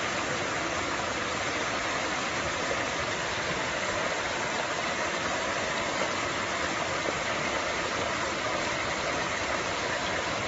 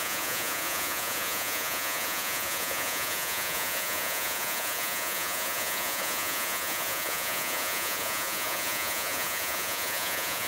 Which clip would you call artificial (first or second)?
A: second